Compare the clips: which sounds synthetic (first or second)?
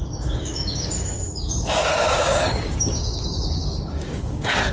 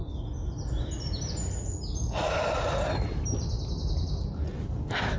first